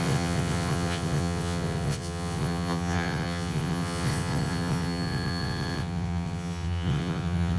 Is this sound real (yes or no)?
no